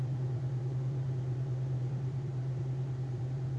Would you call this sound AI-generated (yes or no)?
yes